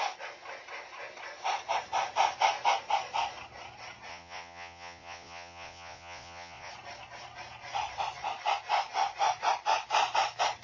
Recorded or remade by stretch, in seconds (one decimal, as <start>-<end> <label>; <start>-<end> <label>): 0.0-4.1 recorded; 4.1-6.7 remade; 6.7-10.6 recorded